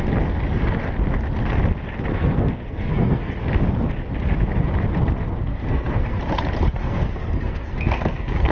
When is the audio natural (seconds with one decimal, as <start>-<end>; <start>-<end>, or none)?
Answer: 0.0-2.1; 3.3-5.5; 6.2-6.8